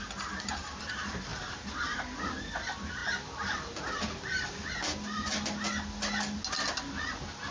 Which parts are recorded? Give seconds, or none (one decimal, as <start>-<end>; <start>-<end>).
0.0-1.3; 2.0-3.0; 4.5-7.5